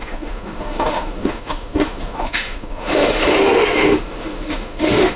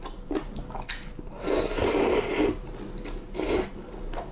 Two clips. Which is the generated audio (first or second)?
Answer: first